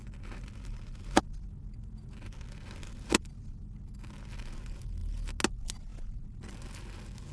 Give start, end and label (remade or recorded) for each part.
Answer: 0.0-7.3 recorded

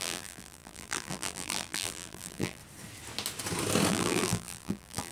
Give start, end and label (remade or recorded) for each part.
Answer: 0.0-2.6 remade; 2.6-3.9 recorded; 3.9-5.1 remade

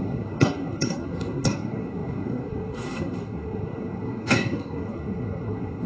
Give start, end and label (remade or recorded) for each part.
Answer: 0.0-5.9 remade